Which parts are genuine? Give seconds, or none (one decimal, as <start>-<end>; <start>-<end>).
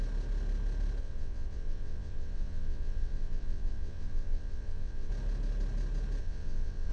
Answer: 0.0-1.0; 5.1-6.2